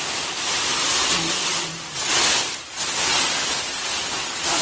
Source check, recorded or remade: recorded